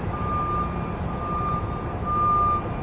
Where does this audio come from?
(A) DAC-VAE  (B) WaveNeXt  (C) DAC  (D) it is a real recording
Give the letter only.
D